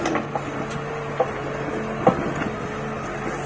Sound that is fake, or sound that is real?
real